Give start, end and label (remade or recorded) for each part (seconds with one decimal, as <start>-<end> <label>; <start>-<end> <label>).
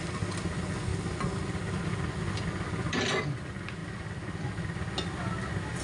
0.0-5.8 recorded